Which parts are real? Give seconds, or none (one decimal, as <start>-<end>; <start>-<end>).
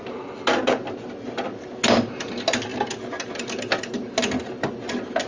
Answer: 0.0-5.3